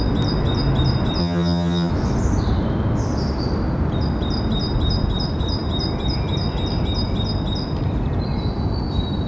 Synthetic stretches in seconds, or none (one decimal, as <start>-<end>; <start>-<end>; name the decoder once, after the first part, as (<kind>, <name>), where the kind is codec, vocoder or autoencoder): 1.2-1.9 (vocoder, HiFi-GAN)